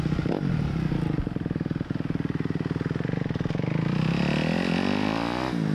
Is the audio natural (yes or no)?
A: yes